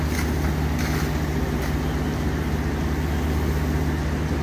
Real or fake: real